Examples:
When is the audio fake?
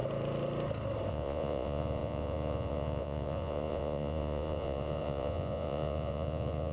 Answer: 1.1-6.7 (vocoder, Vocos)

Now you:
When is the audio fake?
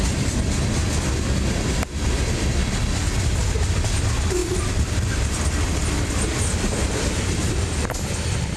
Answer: 4.4-7.8 (vocoder, BigVGAN v2)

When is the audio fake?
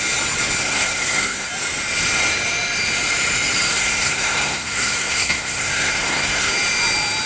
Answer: 0.6-1.5 (codec, SNAC); 3.7-6.5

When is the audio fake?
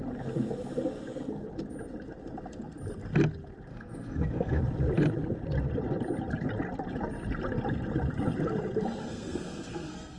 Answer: 3.7-4.6 (codec, SNAC); 9.0-10.2